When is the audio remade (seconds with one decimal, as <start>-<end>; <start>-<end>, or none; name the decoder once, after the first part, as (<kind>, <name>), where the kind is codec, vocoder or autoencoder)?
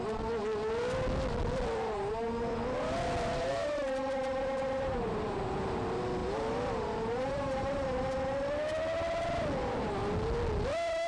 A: 3.5-5.8 (vocoder, BigVGAN v2); 6.2-8.0